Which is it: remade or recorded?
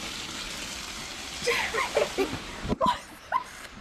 remade